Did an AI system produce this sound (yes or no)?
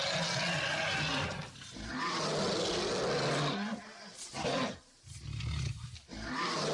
no